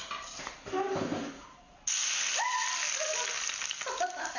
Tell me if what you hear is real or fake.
real